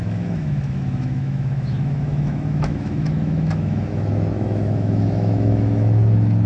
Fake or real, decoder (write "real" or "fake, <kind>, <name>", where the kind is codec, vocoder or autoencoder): fake, autoencoder, DAC-VAE